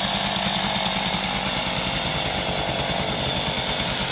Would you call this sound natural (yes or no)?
yes